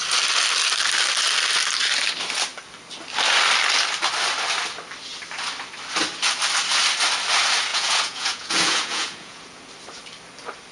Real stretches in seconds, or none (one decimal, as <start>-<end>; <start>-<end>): 0.0-7.7; 9.6-10.7